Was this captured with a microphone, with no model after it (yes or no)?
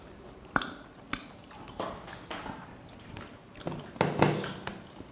yes